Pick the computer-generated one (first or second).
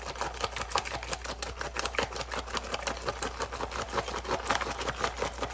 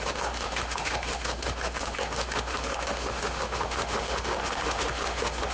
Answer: second